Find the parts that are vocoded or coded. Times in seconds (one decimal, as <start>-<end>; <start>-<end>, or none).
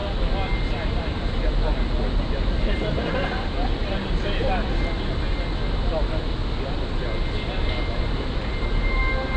none